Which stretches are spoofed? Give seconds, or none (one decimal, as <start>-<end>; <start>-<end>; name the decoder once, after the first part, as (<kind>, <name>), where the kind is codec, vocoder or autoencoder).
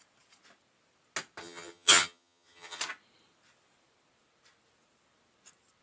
1.4-2.8 (vocoder, HiFi-GAN)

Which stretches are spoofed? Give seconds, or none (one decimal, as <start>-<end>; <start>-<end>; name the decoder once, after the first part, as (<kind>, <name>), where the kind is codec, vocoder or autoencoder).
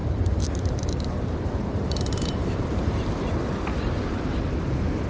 0.0-3.1 (vocoder, BigVGAN v2)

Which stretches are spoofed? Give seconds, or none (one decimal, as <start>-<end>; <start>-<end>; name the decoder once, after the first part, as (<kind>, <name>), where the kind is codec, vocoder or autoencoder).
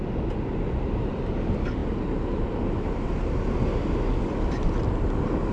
none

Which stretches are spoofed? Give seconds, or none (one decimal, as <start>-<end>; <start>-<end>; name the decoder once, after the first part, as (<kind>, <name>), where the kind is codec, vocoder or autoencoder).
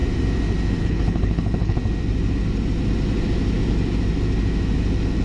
0.8-1.8 (codec, HILCodec)